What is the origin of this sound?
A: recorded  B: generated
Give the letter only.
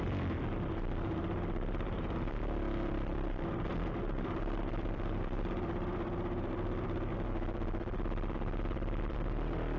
B